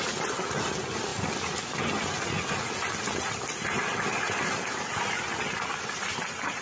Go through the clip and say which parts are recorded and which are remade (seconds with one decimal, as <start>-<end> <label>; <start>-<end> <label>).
0.0-6.6 recorded